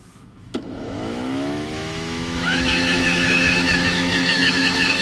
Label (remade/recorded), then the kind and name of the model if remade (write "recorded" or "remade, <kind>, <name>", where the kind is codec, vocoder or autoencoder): remade, autoencoder, DAC-VAE